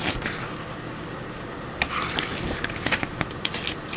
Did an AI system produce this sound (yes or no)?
no